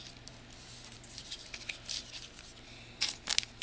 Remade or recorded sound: recorded